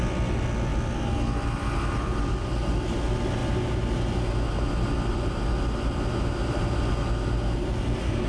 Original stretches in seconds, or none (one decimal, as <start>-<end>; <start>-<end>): 0.0-8.3